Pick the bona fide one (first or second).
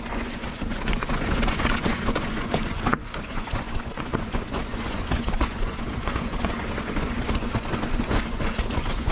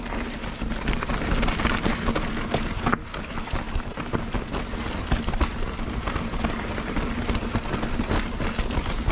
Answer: second